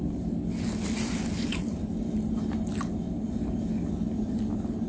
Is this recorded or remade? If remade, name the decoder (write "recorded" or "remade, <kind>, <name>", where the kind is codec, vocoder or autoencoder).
recorded